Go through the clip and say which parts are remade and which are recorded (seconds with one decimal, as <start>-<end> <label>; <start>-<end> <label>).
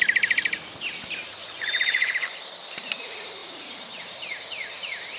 0.0-1.4 recorded; 1.4-2.1 remade; 2.1-5.2 recorded